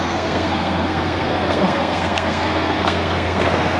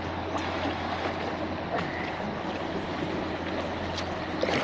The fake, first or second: first